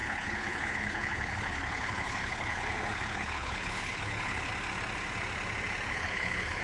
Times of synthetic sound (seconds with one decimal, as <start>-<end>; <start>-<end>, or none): 0.0-4.5; 5.9-6.6